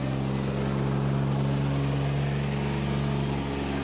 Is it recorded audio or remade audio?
recorded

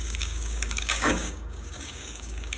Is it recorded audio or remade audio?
remade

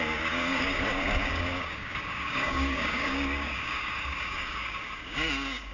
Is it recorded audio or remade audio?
remade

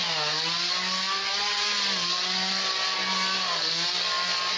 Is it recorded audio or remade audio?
recorded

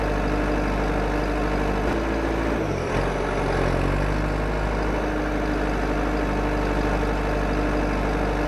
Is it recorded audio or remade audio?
recorded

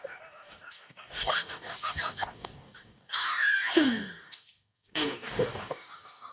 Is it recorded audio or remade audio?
remade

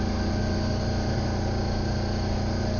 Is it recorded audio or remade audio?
recorded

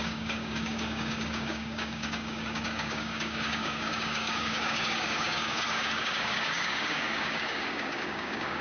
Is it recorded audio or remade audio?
remade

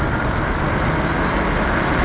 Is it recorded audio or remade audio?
recorded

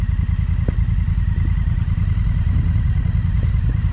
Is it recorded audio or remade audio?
recorded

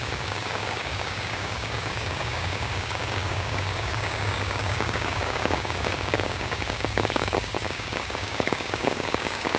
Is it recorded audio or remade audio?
remade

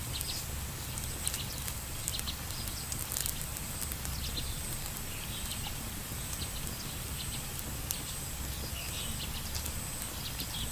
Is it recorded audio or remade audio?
recorded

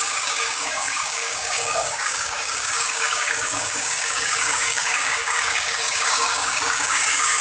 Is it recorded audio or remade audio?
remade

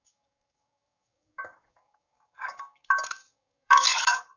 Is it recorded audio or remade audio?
remade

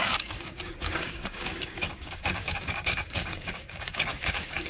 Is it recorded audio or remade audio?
remade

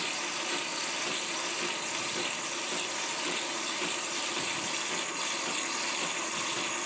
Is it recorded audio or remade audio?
recorded